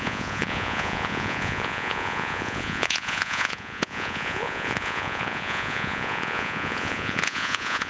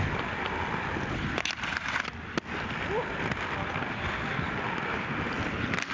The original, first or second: second